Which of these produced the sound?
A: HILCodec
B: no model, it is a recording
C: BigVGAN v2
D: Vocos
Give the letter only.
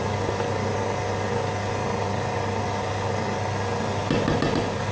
B